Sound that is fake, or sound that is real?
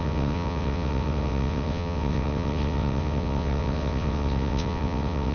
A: fake